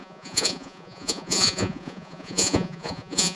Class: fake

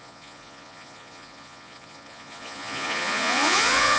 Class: fake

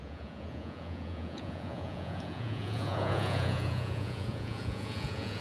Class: fake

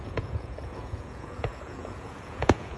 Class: fake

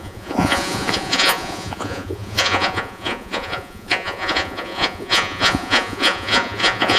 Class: fake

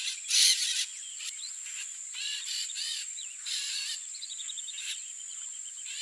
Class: fake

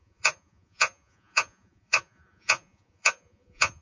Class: fake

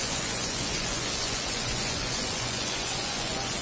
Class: fake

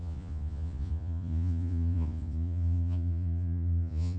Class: fake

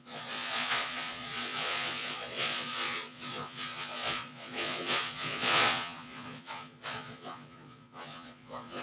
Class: fake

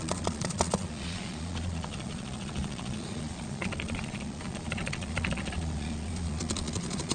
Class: fake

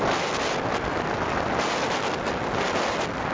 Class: real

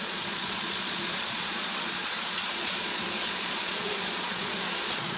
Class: fake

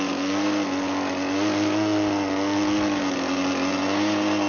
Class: real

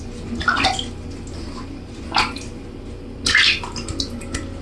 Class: real